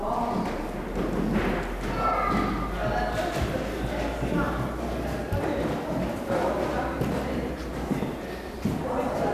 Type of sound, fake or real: real